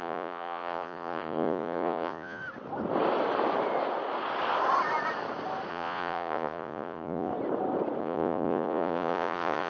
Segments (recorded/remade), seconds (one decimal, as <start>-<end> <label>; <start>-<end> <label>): 0.0-2.4 remade; 2.4-5.7 recorded; 5.7-7.3 remade; 7.3-8.0 recorded; 8.0-9.7 remade